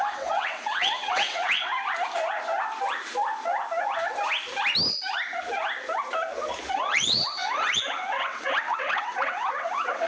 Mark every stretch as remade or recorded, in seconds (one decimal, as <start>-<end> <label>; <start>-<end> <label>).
0.0-1.7 remade; 1.7-6.7 recorded; 6.7-10.1 remade